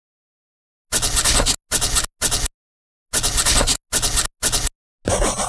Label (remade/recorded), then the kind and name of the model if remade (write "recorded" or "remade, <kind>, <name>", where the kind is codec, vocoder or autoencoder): recorded